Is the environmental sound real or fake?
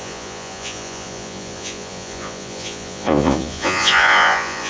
fake